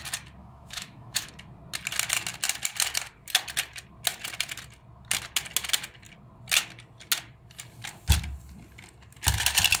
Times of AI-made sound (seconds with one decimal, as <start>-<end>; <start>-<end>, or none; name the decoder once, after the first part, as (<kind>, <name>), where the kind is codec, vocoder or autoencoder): 0.4-1.3 (autoencoder, DAC-VAE)